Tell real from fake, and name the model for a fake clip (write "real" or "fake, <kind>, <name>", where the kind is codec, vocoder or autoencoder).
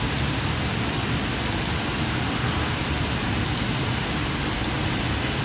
real